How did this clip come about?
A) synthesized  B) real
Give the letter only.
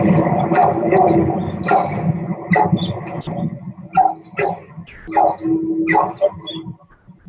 B